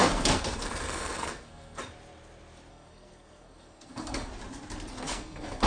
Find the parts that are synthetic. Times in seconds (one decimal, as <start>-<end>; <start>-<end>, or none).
0.0-1.8; 2.7-4.3; 4.9-5.7